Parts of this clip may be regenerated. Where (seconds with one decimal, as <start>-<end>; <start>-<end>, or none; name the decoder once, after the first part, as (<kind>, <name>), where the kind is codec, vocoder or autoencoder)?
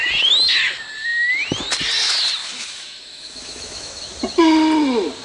2.4-4.0 (autoencoder, DAC-VAE)